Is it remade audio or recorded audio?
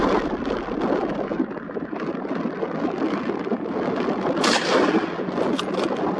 recorded